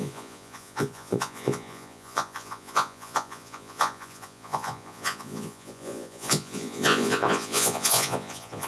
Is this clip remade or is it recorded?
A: remade